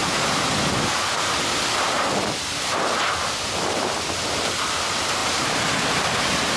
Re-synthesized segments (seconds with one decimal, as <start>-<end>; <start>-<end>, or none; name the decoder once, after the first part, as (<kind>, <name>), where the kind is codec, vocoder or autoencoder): 1.0-6.6 (vocoder, BigVGAN v2)